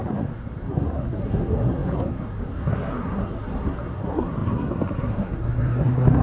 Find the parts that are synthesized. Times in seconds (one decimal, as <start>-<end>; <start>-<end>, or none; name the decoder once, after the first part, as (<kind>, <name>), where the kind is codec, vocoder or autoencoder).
0.0-6.2 (codec, SNAC)